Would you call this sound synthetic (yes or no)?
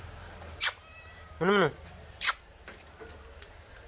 yes